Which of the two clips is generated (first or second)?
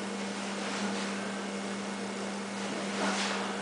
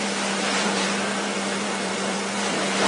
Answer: second